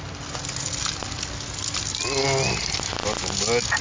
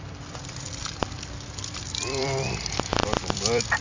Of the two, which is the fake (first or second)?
second